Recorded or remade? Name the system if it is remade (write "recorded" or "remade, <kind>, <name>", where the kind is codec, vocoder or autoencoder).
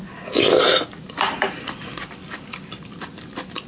remade, vocoder, BigVGAN v2